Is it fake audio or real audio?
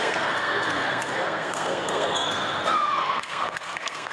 fake